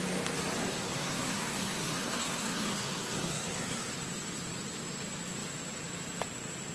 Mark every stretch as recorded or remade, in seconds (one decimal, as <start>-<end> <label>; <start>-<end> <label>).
0.0-0.6 recorded; 0.6-3.9 remade; 3.9-6.7 recorded